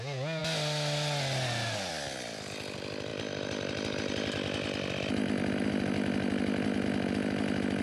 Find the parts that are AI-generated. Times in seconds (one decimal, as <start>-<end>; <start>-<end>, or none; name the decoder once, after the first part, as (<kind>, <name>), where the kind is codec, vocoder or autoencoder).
none